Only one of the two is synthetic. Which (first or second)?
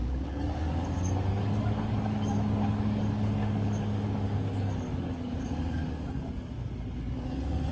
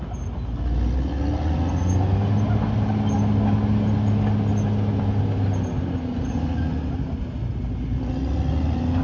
first